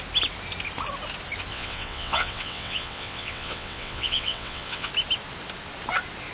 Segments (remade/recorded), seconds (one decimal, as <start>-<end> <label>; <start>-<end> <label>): 0.0-1.5 recorded; 1.5-4.9 remade; 4.9-6.3 recorded